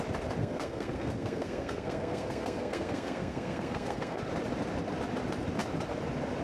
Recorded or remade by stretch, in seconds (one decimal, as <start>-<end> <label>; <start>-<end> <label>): 0.0-0.4 recorded; 0.4-4.2 remade; 4.2-6.4 recorded